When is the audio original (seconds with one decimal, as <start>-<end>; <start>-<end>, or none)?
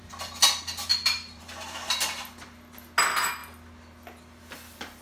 0.0-5.0